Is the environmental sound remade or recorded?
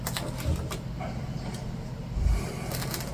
recorded